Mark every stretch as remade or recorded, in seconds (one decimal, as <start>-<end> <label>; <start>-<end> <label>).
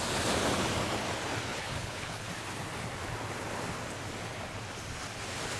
0.0-1.5 recorded; 1.5-2.3 remade; 2.3-5.6 recorded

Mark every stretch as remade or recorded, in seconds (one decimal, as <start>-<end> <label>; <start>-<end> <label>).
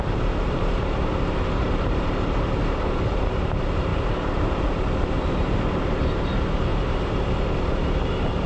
0.0-8.5 remade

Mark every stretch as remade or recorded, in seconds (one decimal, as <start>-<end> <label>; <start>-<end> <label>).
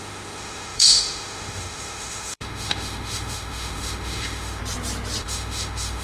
0.0-4.6 remade; 4.6-5.2 recorded; 5.2-6.0 remade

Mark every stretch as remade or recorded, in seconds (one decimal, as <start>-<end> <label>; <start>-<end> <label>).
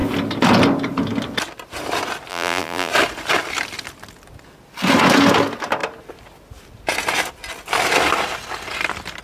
0.0-2.3 recorded; 2.3-2.9 remade; 2.9-9.2 recorded